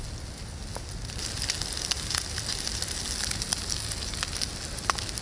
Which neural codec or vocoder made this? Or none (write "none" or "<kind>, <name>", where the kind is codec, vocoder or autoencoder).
none